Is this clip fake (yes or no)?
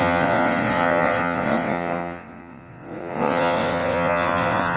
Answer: yes